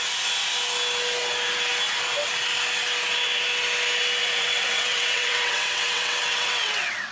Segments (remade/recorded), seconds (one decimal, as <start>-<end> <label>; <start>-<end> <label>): 0.0-4.2 recorded; 4.2-7.1 remade

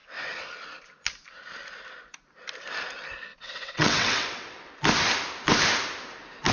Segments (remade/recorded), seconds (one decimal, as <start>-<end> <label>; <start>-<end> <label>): 0.0-0.5 remade; 0.5-3.3 recorded; 3.3-4.7 remade; 4.7-6.5 recorded

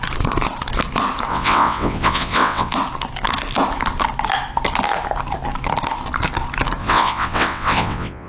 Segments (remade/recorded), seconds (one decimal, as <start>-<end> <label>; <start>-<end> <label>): 0.0-1.3 recorded; 1.3-2.7 remade; 2.7-6.8 recorded; 6.8-8.3 remade

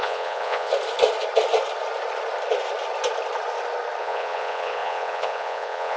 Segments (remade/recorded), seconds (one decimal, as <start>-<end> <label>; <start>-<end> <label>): 0.0-0.7 remade; 0.7-4.0 recorded; 4.0-6.0 remade

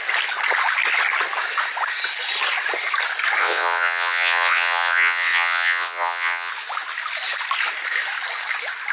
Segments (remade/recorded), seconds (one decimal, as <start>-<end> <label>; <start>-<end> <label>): 0.0-3.4 recorded; 3.4-6.5 remade; 6.5-8.9 recorded